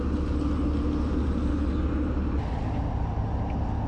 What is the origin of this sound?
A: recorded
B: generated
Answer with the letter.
A